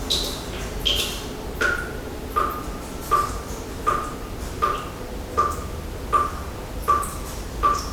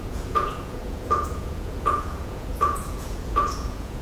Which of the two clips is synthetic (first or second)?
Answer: second